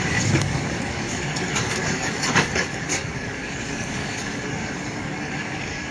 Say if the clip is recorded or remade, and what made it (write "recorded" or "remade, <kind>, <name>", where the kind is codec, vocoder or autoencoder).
remade, codec, DAC